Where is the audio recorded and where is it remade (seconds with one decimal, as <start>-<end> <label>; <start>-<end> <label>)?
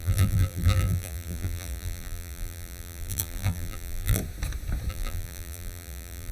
0.0-4.2 remade; 4.2-4.9 recorded; 4.9-6.3 remade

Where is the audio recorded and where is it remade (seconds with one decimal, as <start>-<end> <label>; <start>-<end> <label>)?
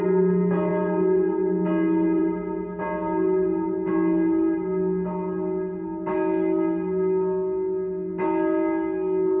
0.0-9.4 recorded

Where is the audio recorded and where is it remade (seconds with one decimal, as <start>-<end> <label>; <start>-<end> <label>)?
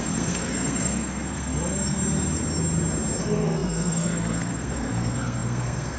0.0-1.5 remade; 1.5-3.2 recorded; 3.2-6.0 remade